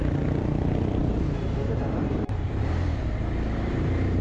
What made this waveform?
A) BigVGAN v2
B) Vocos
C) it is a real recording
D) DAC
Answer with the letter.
A